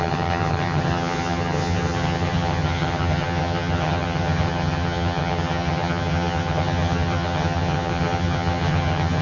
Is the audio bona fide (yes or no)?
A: no